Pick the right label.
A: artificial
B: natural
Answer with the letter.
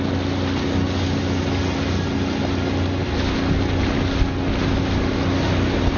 B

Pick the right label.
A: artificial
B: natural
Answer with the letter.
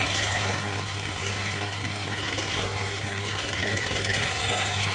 A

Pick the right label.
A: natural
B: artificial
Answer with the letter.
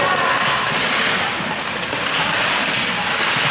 A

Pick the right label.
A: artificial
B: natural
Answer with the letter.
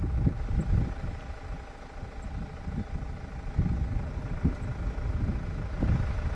B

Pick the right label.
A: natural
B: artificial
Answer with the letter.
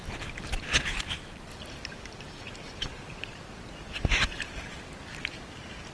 A